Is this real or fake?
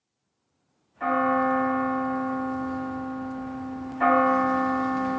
real